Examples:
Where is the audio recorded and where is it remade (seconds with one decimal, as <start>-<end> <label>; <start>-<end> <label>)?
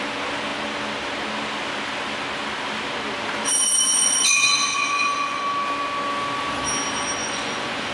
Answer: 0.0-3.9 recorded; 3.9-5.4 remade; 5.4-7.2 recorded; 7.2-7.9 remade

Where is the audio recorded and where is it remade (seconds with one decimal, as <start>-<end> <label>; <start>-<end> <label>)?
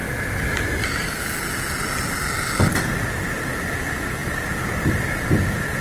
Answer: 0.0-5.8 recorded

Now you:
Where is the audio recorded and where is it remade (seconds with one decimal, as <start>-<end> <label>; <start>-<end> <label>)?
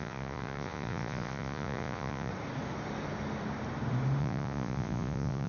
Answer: 0.0-2.3 remade; 2.3-4.2 recorded; 4.2-5.5 remade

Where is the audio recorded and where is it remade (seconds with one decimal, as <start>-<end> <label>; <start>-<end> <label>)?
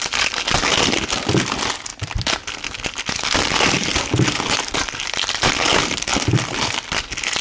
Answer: 0.0-7.4 recorded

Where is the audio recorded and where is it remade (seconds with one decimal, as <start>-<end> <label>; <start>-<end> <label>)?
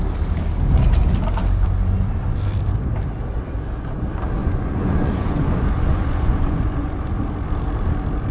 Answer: 0.0-4.4 recorded; 4.4-7.2 remade; 7.2-8.3 recorded